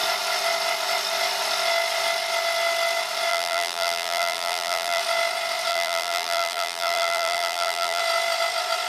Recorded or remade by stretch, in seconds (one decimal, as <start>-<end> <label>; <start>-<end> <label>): 0.0-3.3 recorded; 3.3-5.0 remade; 5.0-5.7 recorded; 5.7-8.0 remade; 8.0-8.9 recorded